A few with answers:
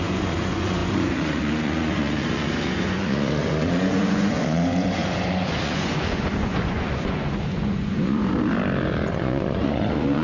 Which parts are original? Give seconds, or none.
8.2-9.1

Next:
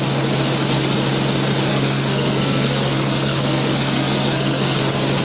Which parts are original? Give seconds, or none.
0.0-1.7; 4.8-5.2

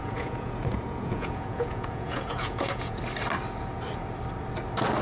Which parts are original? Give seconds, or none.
3.0-5.0